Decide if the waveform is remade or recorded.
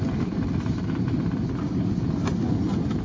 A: recorded